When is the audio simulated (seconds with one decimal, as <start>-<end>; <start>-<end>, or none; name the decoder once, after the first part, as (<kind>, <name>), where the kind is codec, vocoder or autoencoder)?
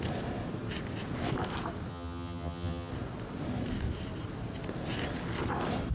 1.9-2.9 (vocoder, HiFi-GAN)